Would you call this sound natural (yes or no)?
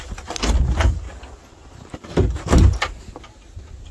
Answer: yes